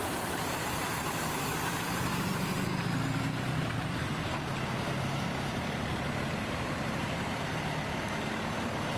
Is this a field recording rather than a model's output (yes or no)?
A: no